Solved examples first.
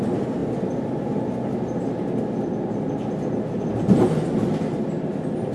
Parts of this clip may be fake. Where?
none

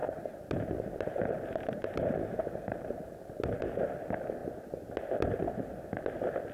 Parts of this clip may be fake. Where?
0.0-3.9 (vocoder, BigVGAN v2)

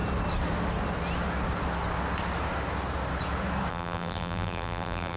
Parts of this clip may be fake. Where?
3.7-5.2 (vocoder, BigVGAN v2)

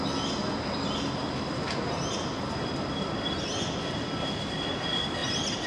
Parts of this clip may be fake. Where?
1.2-4.6 (vocoder, BigVGAN v2)

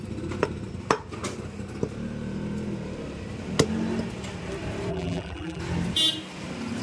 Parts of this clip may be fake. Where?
4.9-5.6 (vocoder, BigVGAN v2)

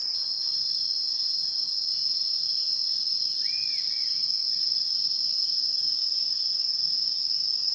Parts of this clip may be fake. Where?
0.0-5.6 (vocoder, BigVGAN v2); 7.2-7.7

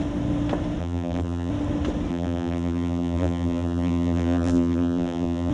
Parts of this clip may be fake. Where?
0.8-1.5 (vocoder, BigVGAN v2); 2.1-5.5